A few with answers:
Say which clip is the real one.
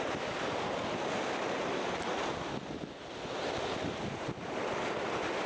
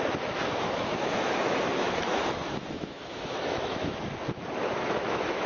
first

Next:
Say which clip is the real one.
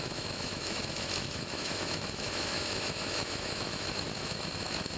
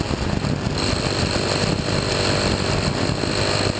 second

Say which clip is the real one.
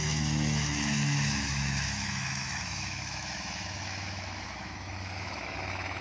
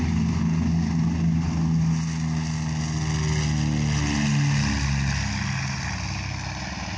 second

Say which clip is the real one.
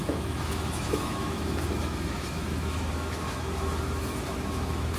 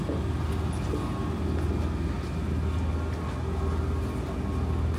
second